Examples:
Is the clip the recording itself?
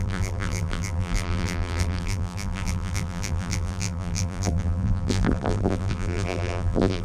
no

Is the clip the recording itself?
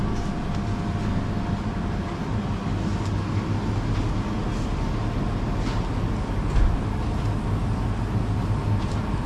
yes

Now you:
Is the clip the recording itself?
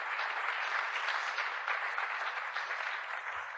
yes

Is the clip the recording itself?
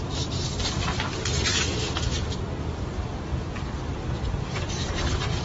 no